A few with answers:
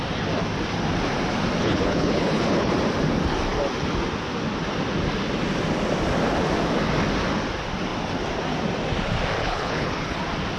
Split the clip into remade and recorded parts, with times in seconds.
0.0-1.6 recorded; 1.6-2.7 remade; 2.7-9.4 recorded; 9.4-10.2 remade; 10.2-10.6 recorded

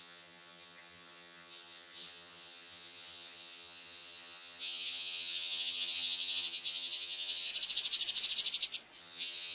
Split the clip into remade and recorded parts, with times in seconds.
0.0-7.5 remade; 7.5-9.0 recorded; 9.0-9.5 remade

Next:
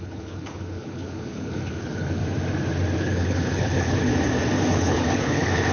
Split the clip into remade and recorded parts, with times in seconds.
0.0-2.2 remade; 2.2-3.0 recorded; 3.0-4.1 remade; 4.1-4.7 recorded; 4.7-5.7 remade

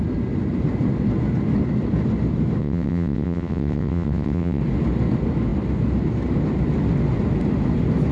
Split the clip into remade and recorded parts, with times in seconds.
0.0-2.6 recorded; 2.6-4.6 remade; 4.6-8.1 recorded